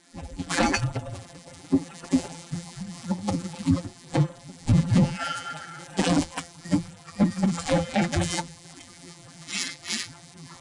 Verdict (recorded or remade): remade